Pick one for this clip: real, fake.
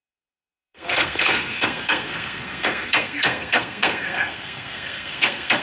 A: fake